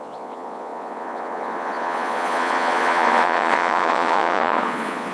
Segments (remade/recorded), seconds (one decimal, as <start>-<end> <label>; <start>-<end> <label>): 0.0-5.1 remade